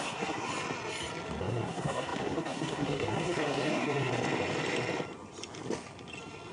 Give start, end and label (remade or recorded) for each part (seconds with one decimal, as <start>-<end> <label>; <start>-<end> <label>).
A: 0.0-0.5 remade; 0.5-1.4 recorded; 1.4-4.1 remade; 4.1-6.5 recorded